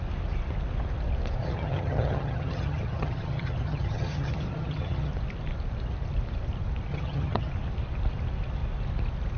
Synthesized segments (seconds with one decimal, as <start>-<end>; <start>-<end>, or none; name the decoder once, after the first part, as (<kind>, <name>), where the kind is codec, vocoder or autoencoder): 1.4-5.1 (vocoder, HiFi-GAN); 6.9-7.5